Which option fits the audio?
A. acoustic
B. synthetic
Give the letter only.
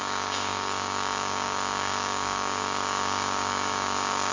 B